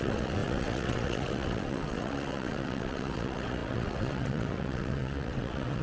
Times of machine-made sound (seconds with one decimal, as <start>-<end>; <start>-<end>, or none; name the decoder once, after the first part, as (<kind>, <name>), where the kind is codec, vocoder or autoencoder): 0.0-5.8 (vocoder, WaveNeXt)